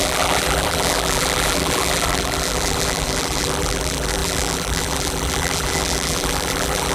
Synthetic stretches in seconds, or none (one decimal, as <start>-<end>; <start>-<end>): 0.0-6.9

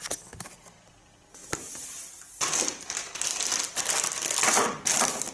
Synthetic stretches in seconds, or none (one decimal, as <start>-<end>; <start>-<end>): none

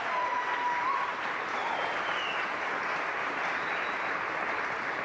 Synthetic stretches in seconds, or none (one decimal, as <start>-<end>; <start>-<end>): 0.0-1.6; 4.6-5.0

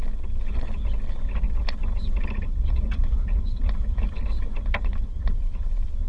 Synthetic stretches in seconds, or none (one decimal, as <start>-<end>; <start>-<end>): 1.8-4.1; 4.5-6.1

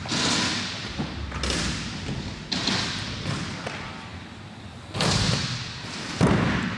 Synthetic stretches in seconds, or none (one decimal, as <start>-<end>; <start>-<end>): 2.8-4.1; 4.6-6.8

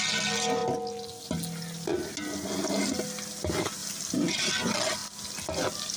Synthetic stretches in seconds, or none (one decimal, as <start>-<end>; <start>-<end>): 3.8-4.4; 5.0-6.0

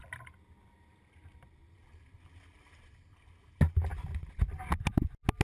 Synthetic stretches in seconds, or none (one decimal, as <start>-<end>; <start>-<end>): 0.0-0.7